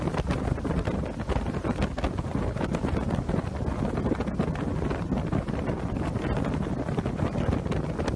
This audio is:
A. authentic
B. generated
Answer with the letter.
A